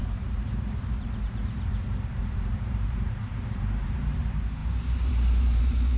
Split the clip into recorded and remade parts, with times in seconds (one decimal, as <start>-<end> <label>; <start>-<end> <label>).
0.0-1.7 remade; 1.7-2.2 recorded; 2.2-6.0 remade